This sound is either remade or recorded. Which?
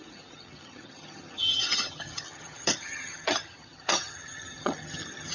remade